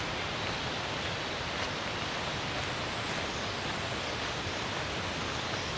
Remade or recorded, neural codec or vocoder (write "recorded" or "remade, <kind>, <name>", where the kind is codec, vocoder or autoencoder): recorded